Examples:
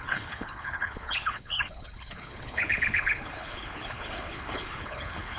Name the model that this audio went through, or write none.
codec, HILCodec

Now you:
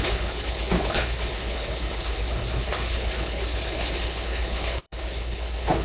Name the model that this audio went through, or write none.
codec, HILCodec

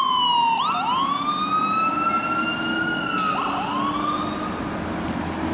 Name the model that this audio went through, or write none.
none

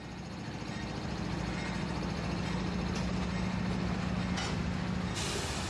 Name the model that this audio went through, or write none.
none